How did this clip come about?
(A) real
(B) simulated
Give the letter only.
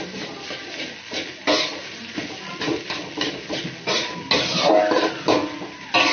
A